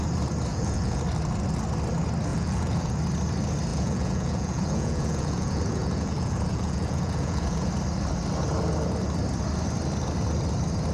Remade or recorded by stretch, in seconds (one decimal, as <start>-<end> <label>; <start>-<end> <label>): 0.0-0.5 recorded; 0.5-1.0 remade; 1.0-2.3 recorded; 2.3-3.0 remade; 3.0-3.7 recorded; 3.7-7.7 remade; 7.7-10.9 recorded